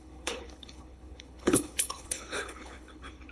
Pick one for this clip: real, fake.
fake